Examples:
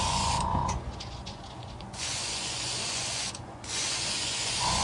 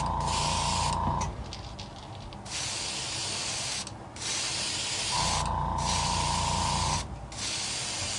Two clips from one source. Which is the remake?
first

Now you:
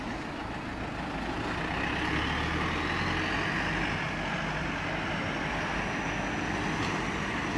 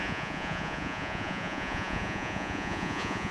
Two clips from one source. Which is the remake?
second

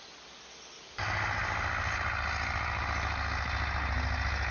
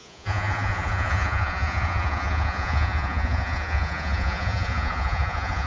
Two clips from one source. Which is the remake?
second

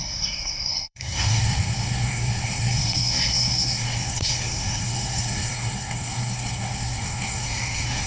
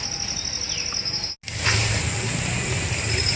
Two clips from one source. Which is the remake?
first